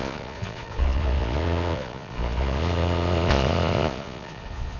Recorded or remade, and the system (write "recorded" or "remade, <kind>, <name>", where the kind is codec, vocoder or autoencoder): remade, vocoder, Vocos